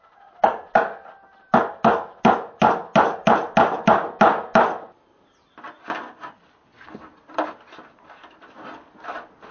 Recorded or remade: recorded